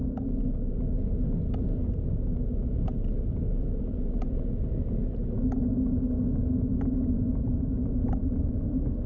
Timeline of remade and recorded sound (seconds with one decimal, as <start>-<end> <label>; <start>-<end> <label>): 0.0-9.1 recorded